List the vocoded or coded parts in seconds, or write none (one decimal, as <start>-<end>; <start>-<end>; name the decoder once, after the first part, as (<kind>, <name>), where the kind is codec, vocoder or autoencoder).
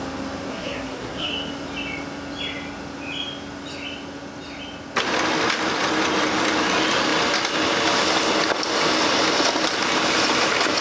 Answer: 0.5-1.3 (codec, SNAC)